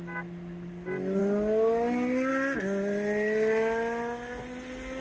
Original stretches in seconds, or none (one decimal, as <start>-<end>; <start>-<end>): 0.0-5.0